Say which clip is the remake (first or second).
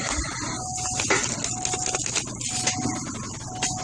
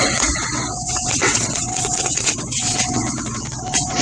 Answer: second